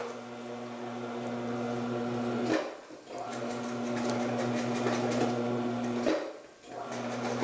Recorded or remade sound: recorded